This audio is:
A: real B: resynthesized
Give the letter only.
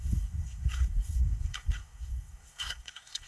B